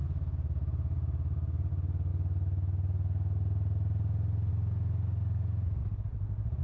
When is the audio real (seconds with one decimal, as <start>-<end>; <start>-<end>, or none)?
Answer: 1.7-5.8